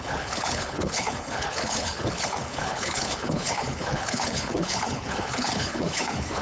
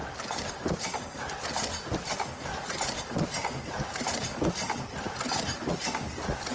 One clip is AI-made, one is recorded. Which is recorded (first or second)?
second